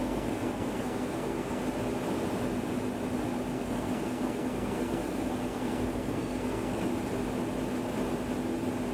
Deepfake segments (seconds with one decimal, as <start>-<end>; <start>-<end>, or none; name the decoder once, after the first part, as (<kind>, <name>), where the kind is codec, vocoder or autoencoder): 0.0-1.6 (codec, SNAC); 3.5-6.9